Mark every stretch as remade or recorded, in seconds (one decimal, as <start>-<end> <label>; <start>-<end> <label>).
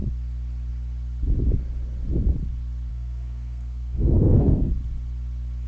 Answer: 0.0-2.9 recorded; 2.9-4.7 remade; 4.7-5.7 recorded